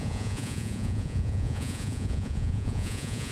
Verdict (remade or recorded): remade